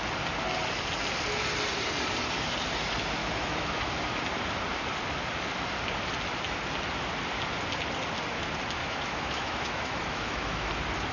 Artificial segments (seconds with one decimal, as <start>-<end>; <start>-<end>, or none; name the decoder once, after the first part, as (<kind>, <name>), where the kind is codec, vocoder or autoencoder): 3.2-3.9 (autoencoder, DAC-VAE); 8.8-10.7